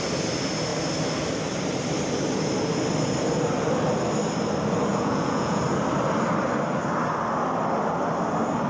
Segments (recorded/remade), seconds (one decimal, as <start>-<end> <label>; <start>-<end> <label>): 0.0-4.9 recorded; 4.9-5.6 remade; 5.6-8.7 recorded